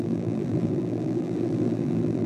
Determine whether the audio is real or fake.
fake